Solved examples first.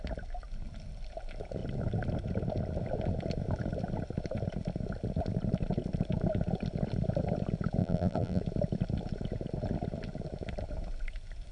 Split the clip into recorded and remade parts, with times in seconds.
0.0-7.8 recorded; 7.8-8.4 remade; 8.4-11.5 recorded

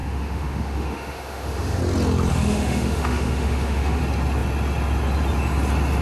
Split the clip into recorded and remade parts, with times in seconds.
0.0-1.8 remade; 1.8-2.3 recorded; 2.3-4.0 remade; 4.0-6.0 recorded

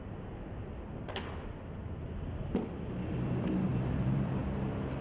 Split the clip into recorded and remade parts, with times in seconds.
0.0-1.8 recorded; 1.8-2.8 remade; 2.8-3.7 recorded; 3.7-4.4 remade; 4.4-5.0 recorded